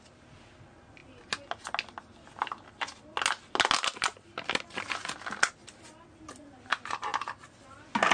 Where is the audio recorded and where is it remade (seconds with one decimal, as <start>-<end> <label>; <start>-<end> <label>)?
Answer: 0.0-8.1 recorded